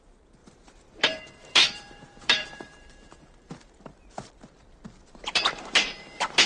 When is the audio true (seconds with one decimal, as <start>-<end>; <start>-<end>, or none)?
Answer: 0.0-0.4; 4.3-5.0